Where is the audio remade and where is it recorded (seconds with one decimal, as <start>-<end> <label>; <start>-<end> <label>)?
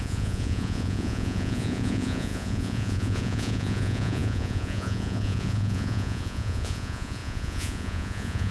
0.0-8.5 remade